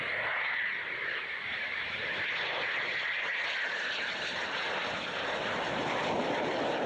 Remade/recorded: remade